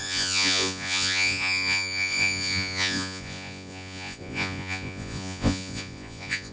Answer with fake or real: fake